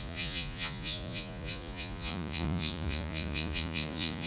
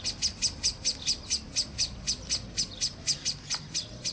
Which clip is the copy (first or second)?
first